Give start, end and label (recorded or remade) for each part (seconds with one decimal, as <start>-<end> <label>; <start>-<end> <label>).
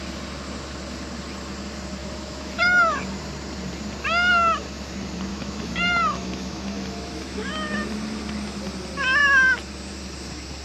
0.0-2.0 recorded; 2.0-3.0 remade; 3.0-5.3 recorded; 5.3-7.5 remade; 7.5-10.6 recorded